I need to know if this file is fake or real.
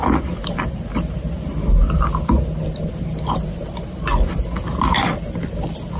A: real